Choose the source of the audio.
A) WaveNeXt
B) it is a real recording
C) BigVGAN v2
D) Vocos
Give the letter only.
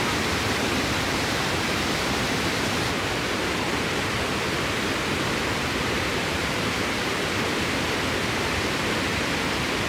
C